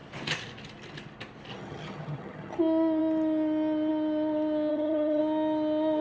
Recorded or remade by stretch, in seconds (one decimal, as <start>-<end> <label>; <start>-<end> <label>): 0.0-1.5 recorded; 1.5-2.6 remade; 2.6-4.7 recorded; 4.7-5.2 remade; 5.2-6.0 recorded